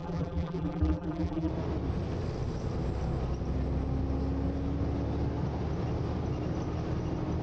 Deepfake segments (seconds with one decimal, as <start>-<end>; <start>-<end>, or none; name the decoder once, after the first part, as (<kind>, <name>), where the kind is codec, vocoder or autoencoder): 0.0-1.5 (vocoder, BigVGAN v2)